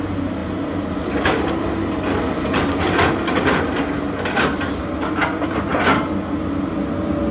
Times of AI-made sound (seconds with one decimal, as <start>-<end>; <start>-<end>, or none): none